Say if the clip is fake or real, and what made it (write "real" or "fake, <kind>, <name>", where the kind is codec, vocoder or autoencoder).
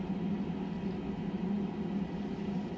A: real